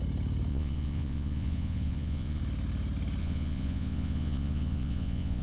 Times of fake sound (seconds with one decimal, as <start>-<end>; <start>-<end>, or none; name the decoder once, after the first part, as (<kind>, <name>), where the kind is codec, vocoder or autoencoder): 0.5-2.4 (vocoder, Vocos); 3.2-5.4